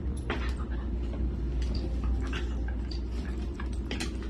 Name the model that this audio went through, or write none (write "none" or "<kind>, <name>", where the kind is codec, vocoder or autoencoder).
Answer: none